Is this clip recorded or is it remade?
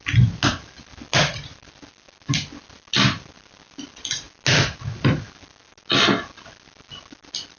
recorded